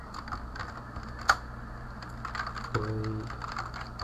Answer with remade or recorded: recorded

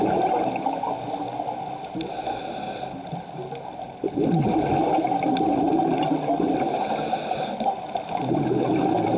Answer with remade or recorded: recorded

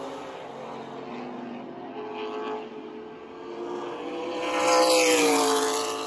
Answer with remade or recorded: recorded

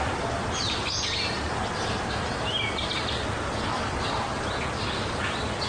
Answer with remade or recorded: recorded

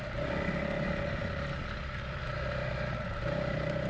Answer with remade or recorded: recorded